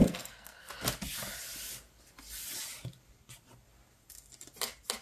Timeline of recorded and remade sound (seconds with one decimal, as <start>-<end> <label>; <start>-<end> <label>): 0.0-0.7 remade; 0.7-5.0 recorded